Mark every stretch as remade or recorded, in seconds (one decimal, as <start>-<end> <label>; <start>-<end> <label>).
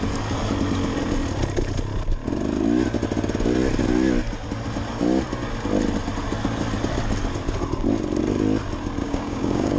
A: 0.0-9.0 recorded; 9.0-9.8 remade